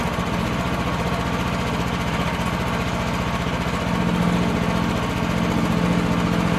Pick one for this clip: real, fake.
real